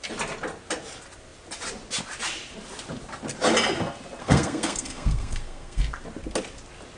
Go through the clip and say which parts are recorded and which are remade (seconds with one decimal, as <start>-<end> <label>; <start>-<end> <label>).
0.0-4.2 recorded; 4.2-5.8 remade; 5.8-7.0 recorded